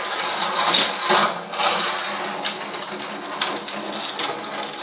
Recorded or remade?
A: recorded